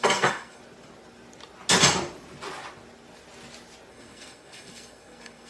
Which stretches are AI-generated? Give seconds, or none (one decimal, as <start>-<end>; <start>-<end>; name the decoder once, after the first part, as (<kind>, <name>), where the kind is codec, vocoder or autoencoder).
0.0-0.6 (codec, SNAC); 3.9-5.5